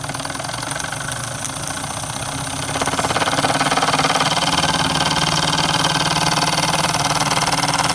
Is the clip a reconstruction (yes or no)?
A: no